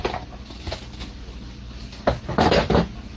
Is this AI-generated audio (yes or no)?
no